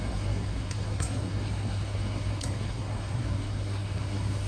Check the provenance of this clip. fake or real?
fake